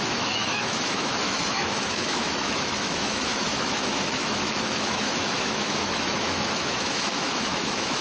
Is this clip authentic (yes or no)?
no